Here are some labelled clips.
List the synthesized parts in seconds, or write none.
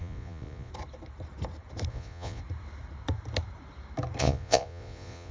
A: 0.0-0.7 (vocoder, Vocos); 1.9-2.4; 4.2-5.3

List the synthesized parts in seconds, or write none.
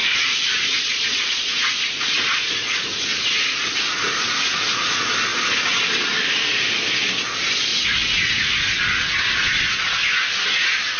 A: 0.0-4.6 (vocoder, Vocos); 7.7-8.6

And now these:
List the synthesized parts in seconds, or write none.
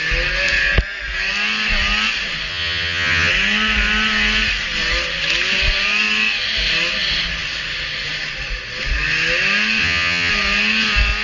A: 2.5-3.3 (vocoder, HiFi-GAN); 9.8-10.3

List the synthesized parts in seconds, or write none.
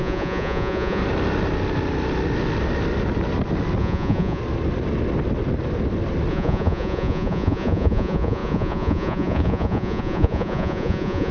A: 0.0-1.0 (vocoder, Vocos); 3.8-4.4; 6.3-11.3